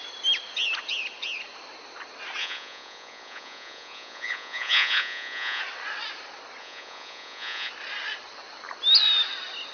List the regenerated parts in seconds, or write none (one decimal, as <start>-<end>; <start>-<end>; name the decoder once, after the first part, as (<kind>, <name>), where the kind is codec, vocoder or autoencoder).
2.4-5.6 (vocoder, Vocos); 6.6-7.7